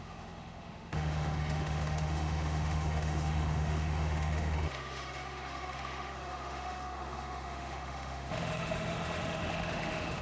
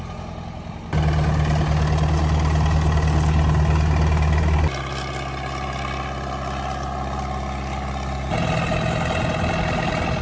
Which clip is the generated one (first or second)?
first